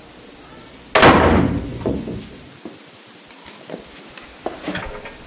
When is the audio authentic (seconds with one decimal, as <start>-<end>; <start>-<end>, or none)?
0.0-1.7; 2.2-5.3